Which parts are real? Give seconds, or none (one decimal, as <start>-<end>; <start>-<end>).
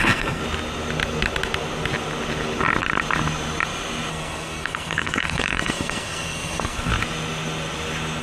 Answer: 0.4-4.1; 6.9-8.2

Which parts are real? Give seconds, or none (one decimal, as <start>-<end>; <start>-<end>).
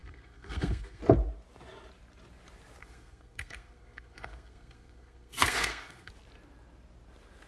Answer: 1.0-2.8; 6.1-7.5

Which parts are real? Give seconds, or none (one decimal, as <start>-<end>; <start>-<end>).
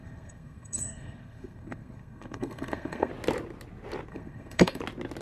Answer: 3.1-4.1; 4.8-5.2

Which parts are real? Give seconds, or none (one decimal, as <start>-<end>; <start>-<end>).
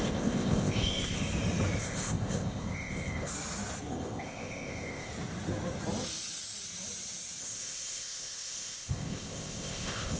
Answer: 1.2-1.8; 3.3-3.9; 5.1-7.4